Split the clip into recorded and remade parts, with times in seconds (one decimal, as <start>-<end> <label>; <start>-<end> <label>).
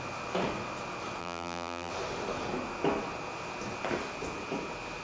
0.0-1.2 recorded; 1.2-1.9 remade; 1.9-5.0 recorded